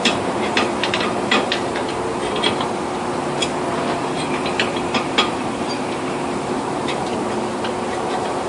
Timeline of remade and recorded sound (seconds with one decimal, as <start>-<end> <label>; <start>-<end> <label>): 0.0-1.8 remade; 1.8-4.5 recorded; 4.5-7.1 remade; 7.1-7.9 recorded; 7.9-8.5 remade